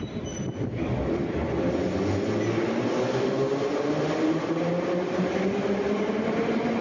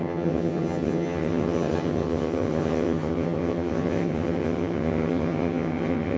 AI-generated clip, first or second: second